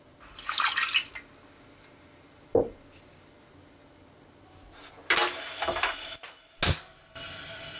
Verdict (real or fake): real